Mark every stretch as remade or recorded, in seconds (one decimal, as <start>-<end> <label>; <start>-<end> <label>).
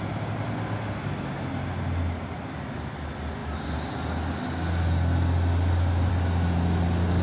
0.0-7.2 recorded